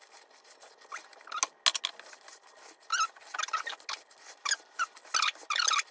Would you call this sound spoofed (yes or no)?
no